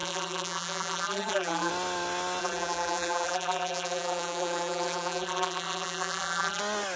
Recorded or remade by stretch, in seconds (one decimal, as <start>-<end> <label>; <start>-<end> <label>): 0.0-1.7 remade; 1.7-2.4 recorded; 2.4-6.6 remade; 6.6-7.0 recorded